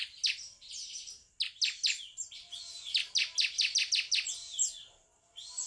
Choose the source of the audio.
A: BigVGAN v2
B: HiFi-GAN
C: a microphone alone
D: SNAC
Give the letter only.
C